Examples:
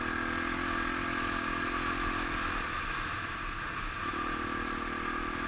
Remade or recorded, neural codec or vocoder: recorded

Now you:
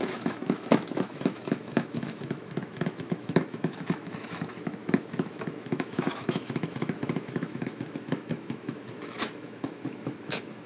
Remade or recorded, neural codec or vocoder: remade, autoencoder, DAC-VAE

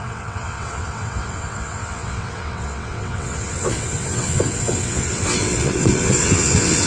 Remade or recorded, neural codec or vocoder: remade, vocoder, WaveNeXt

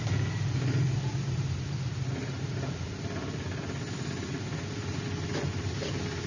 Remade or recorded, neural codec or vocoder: recorded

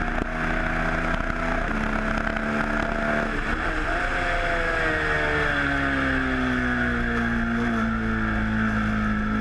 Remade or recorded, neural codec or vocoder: recorded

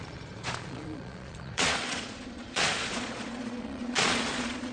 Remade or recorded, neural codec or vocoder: remade, vocoder, Vocos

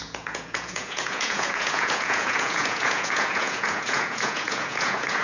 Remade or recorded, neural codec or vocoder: remade, vocoder, Vocos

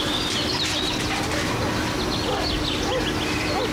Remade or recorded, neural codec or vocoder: recorded